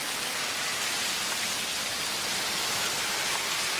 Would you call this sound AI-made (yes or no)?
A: no